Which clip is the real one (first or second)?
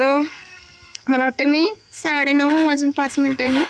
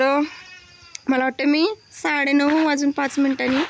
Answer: second